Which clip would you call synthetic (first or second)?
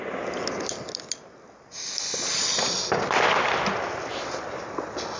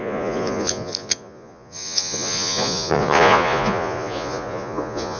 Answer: second